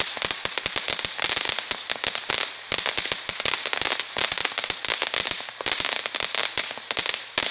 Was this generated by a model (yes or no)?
no